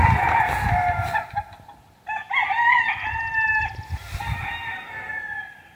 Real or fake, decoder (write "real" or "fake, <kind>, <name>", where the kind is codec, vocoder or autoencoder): real